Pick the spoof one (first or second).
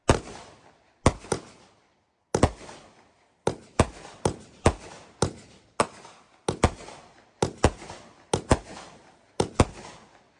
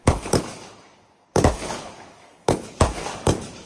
second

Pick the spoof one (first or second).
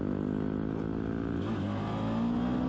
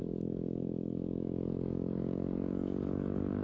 second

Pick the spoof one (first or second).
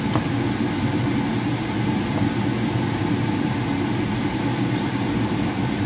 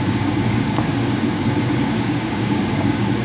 second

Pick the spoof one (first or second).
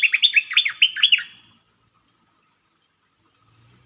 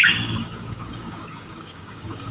second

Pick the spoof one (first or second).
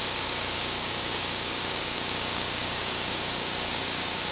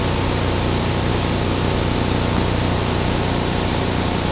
first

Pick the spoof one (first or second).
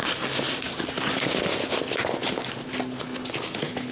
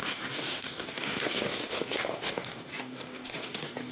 second